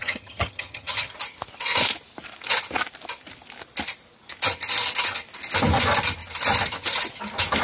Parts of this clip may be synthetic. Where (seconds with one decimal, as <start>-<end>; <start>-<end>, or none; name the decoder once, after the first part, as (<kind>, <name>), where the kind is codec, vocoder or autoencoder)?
0.0-1.1 (vocoder, HiFi-GAN)